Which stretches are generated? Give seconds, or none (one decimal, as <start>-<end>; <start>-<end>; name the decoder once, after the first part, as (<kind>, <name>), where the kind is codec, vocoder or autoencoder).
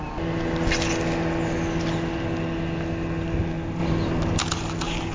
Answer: none